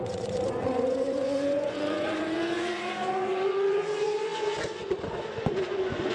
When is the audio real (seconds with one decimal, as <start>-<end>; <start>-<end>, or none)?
none